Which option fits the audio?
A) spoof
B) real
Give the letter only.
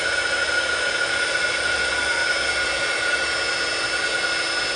B